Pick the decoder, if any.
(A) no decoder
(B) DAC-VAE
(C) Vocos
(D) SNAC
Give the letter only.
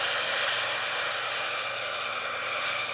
A